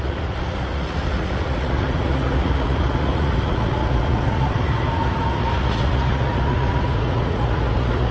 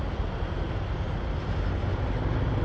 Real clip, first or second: second